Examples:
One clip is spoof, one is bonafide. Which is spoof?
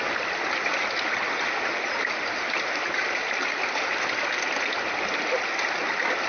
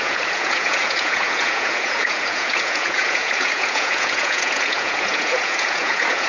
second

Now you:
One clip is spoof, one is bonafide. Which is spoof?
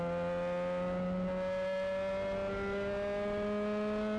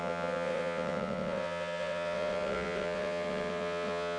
second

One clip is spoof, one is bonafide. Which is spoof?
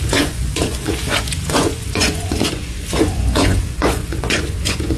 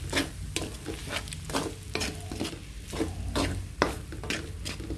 first